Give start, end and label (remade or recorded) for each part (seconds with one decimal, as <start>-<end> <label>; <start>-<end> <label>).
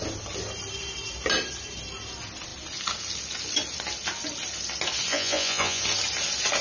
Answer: 0.0-5.1 recorded; 5.1-5.8 remade; 5.8-6.6 recorded